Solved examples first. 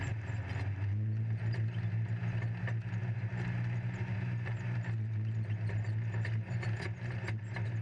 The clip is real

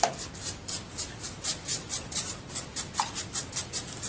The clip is real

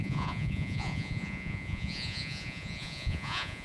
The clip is fake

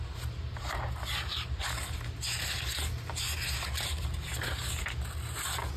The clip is real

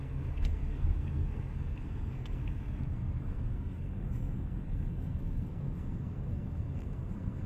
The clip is fake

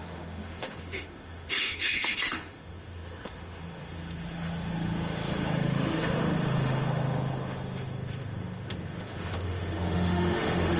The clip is fake